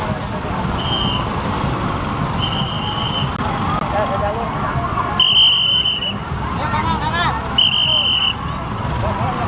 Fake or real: real